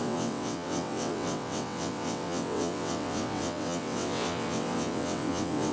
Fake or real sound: fake